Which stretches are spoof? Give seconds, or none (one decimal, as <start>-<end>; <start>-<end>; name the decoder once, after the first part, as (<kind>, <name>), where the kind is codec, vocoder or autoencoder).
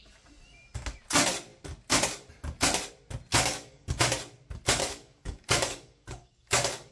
3.3-4.0 (codec, DAC); 4.8-6.9